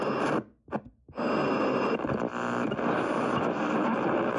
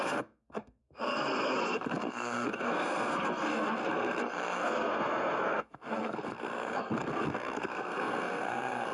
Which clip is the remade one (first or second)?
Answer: second